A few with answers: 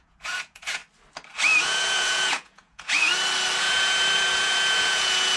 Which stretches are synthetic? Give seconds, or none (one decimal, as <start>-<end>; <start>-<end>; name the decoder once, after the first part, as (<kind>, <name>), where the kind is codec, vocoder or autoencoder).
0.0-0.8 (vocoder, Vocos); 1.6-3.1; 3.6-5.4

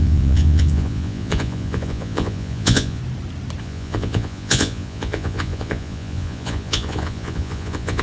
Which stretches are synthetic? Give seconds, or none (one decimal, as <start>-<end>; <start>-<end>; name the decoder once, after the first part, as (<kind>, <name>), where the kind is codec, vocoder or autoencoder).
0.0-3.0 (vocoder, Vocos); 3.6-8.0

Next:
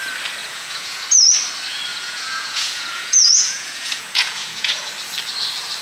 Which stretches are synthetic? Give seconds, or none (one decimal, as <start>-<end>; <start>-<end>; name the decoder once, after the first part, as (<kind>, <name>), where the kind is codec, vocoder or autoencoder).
0.4-1.0 (vocoder, Vocos); 1.9-4.9

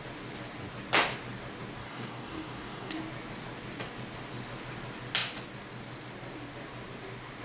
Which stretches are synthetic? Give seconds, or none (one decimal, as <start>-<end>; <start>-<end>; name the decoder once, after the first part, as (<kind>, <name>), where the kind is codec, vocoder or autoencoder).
1.8-3.0 (codec, DAC)